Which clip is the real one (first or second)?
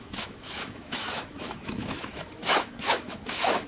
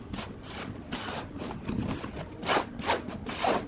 second